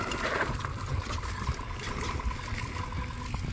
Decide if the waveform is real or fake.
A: real